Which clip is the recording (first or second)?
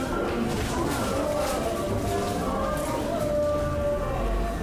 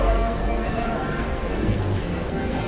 first